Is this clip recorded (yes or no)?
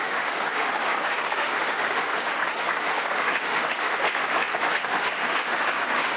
no